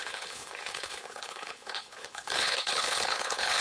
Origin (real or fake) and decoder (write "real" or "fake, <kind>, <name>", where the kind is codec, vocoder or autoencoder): fake, codec, HILCodec